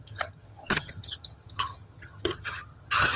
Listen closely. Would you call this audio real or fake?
fake